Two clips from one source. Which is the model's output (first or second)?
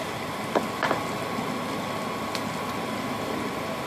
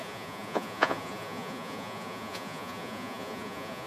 second